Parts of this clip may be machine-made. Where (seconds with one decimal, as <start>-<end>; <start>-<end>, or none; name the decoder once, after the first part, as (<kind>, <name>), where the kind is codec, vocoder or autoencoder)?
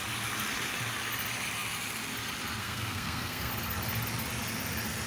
2.6-3.5 (codec, SNAC)